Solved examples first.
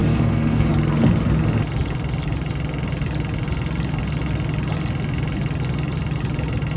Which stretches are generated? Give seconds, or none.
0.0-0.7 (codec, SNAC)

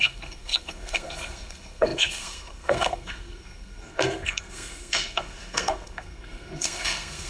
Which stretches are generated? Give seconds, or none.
0.0-7.3 (codec, SNAC)

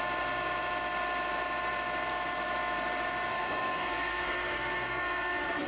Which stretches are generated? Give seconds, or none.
3.3-5.7 (codec, SNAC)

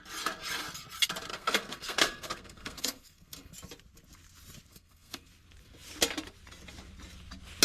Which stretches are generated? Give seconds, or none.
1.3-3.5 (codec, SNAC); 4.7-5.3